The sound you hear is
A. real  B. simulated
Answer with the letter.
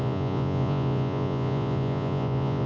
B